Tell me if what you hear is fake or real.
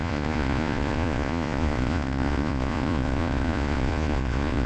fake